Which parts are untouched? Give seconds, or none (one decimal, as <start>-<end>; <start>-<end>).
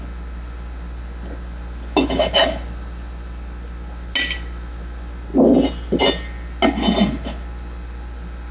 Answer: 0.0-8.5